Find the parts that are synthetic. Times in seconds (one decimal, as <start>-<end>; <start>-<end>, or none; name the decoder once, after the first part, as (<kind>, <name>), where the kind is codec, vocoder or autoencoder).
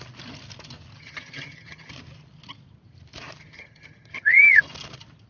1.0-1.9 (vocoder, HiFi-GAN); 3.4-4.6